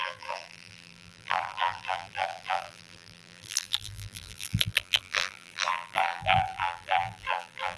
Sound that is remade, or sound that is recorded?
remade